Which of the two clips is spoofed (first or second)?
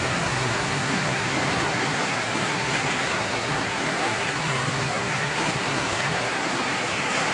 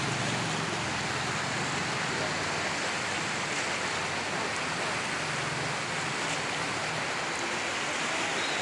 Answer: first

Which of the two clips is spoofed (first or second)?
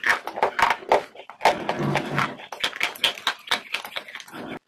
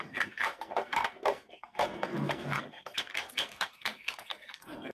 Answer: second